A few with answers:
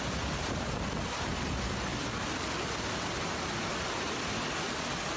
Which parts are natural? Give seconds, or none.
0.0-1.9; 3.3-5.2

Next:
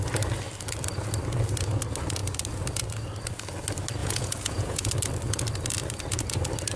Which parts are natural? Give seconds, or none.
0.0-4.0; 4.9-6.8

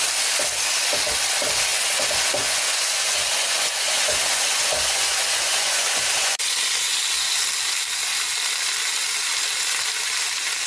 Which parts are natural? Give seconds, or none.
0.0-1.7; 6.4-10.7

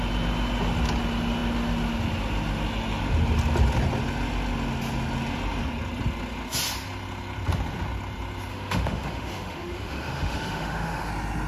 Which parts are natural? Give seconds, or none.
0.0-8.5; 11.1-11.5